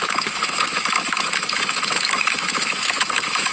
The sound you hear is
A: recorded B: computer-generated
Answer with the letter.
B